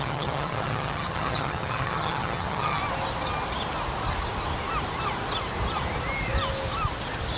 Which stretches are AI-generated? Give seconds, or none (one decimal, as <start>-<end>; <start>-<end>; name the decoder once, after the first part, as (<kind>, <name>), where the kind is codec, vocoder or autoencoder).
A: 0.0-2.8 (vocoder, HiFi-GAN)